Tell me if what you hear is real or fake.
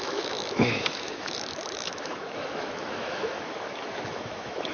fake